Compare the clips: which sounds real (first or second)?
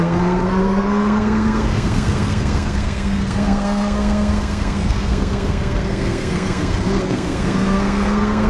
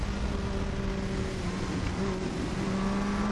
second